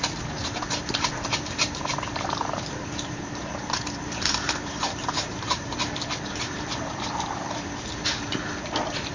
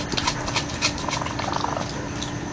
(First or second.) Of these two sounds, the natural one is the second